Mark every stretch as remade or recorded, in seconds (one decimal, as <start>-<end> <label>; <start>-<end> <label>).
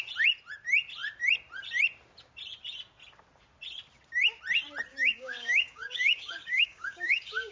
0.0-4.9 recorded; 4.9-7.5 remade